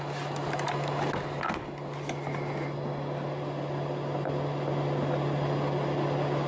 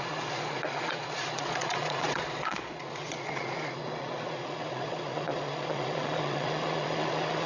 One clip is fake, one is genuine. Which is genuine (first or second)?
first